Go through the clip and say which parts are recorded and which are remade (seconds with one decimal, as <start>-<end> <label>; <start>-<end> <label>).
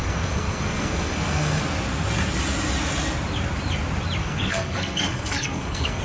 0.0-1.6 remade; 1.6-4.2 recorded; 4.2-6.0 remade